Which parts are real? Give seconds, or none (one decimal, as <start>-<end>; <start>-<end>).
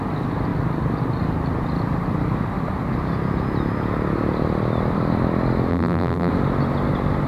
0.0-5.7; 6.3-7.3